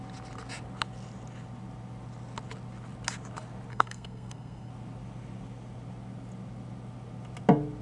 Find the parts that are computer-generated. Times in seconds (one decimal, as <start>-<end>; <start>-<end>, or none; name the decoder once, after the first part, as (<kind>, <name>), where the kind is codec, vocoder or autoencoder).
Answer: 3.7-4.7 (codec, SNAC)